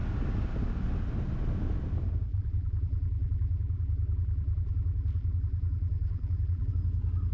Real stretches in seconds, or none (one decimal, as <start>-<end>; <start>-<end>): 0.0-2.3; 6.7-7.3